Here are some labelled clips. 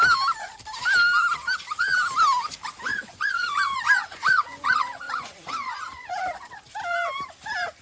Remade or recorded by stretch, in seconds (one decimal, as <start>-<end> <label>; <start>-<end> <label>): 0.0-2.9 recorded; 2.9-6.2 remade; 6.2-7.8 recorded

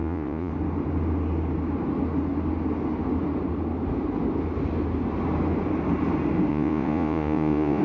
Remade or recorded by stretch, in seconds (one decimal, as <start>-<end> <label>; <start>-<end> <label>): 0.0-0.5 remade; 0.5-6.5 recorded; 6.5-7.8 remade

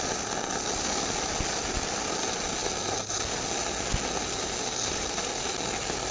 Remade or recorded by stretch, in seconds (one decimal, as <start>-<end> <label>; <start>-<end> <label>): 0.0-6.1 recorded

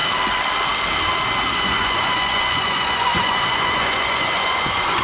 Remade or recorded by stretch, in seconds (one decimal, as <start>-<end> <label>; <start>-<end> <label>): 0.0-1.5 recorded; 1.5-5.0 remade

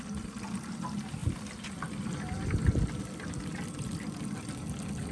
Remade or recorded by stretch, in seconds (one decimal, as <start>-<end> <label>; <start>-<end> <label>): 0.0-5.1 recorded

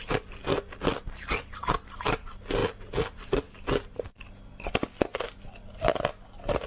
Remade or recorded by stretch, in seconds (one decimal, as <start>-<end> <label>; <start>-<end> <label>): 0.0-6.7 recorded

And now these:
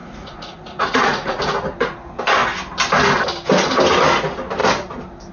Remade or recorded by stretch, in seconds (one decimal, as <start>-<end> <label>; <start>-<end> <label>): 0.0-1.4 remade; 1.4-5.3 recorded

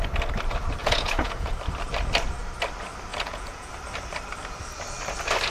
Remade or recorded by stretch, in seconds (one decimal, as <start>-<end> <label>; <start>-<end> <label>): 0.0-0.8 recorded; 0.8-1.5 remade; 1.5-3.1 recorded; 3.1-3.7 remade; 3.7-5.5 recorded